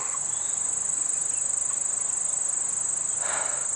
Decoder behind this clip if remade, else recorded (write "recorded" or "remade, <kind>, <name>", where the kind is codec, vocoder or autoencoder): recorded